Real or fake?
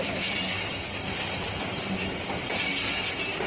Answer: real